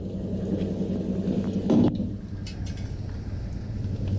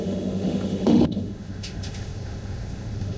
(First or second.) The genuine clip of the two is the first